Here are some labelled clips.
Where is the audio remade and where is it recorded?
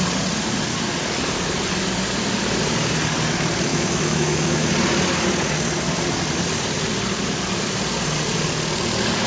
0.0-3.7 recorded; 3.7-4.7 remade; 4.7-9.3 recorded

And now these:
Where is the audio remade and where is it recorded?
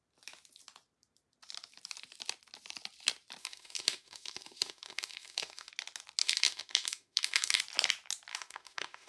0.0-3.4 recorded; 3.4-5.7 remade; 5.7-6.2 recorded; 6.2-7.6 remade; 7.6-8.3 recorded; 8.3-9.1 remade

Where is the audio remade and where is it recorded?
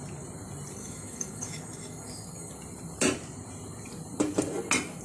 0.0-0.8 recorded; 0.8-2.5 remade; 2.5-5.0 recorded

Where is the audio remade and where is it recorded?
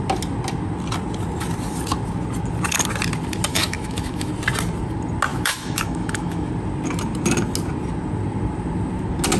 0.0-3.5 recorded; 3.5-4.3 remade; 4.3-5.3 recorded; 5.3-6.5 remade; 6.5-9.4 recorded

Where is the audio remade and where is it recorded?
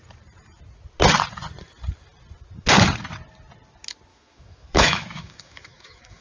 0.0-4.1 recorded; 4.1-6.2 remade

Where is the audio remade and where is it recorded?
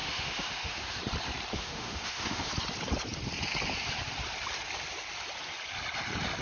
0.0-1.0 remade; 1.0-1.5 recorded; 1.5-2.5 remade; 2.5-6.4 recorded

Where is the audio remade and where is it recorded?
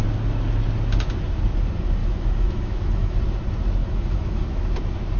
0.0-2.0 recorded; 2.0-3.2 remade; 3.2-3.8 recorded; 3.8-4.7 remade; 4.7-5.2 recorded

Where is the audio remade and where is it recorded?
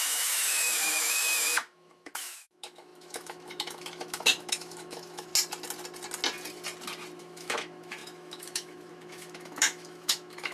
0.0-5.3 remade; 5.3-7.2 recorded; 7.2-10.5 remade